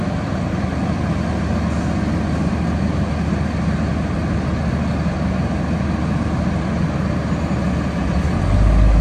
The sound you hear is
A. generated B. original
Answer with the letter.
B